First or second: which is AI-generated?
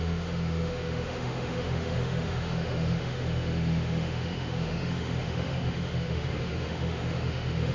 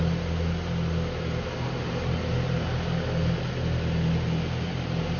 first